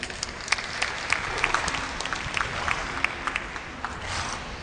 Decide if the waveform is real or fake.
real